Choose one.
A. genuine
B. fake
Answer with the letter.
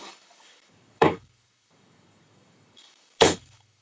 B